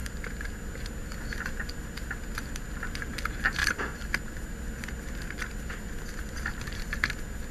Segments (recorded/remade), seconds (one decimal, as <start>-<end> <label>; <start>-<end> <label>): 0.0-7.5 recorded